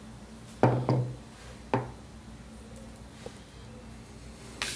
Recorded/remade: recorded